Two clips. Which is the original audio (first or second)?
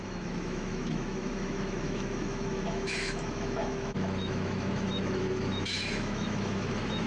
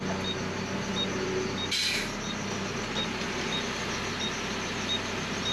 second